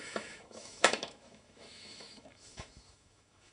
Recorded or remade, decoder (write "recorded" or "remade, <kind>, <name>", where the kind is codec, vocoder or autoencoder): remade, autoencoder, DAC-VAE